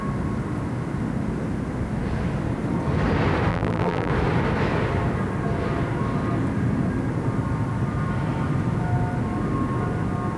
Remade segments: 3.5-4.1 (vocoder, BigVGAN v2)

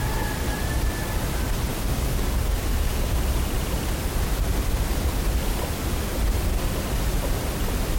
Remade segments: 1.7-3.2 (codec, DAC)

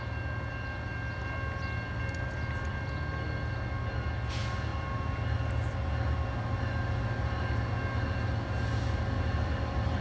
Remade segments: none